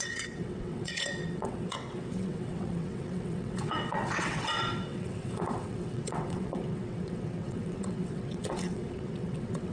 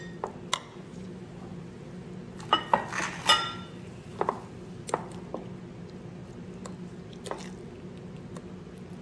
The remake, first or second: first